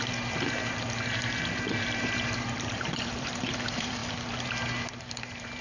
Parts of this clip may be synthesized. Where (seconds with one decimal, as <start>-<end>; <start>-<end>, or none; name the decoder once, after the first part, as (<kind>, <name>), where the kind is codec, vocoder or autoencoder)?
0.0-5.6 (vocoder, BigVGAN v2)